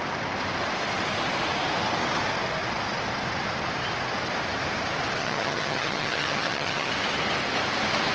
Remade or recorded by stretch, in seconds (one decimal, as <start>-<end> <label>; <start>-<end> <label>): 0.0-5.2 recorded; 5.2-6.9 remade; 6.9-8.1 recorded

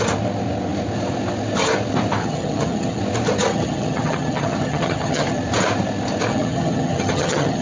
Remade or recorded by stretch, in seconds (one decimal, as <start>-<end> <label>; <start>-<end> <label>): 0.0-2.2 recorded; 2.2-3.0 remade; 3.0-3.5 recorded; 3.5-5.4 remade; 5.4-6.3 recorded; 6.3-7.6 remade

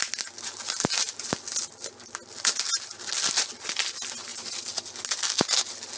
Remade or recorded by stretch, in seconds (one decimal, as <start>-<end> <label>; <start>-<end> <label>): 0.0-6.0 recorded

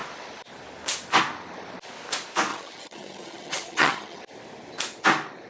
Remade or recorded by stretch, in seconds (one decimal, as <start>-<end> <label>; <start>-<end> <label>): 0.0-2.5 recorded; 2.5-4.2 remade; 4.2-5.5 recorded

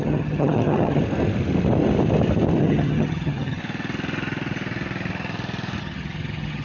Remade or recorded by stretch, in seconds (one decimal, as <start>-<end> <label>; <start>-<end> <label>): 0.0-1.0 remade; 1.0-2.6 recorded; 2.6-3.6 remade; 3.6-5.8 recorded; 5.8-6.6 remade